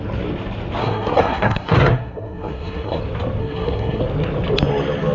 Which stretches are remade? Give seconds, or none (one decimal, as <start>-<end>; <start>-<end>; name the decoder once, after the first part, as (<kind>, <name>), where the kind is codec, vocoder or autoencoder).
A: 0.8-3.0 (codec, SNAC); 3.4-4.0